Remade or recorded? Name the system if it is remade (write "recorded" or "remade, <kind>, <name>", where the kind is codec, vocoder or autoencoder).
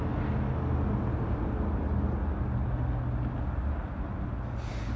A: recorded